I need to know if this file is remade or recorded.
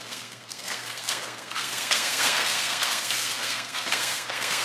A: remade